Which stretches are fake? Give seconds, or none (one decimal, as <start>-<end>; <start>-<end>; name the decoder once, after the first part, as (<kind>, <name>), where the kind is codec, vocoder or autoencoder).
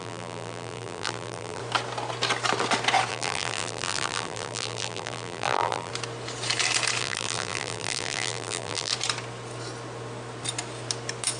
0.0-1.6 (vocoder, BigVGAN v2); 3.1-5.9; 7.0-8.9